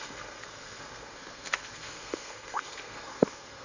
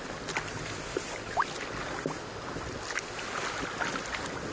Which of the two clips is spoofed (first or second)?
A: first